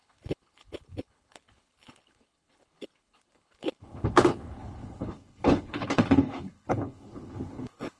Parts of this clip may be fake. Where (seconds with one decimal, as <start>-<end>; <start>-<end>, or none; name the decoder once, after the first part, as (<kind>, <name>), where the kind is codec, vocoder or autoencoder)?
0.0-8.0 (codec, HILCodec)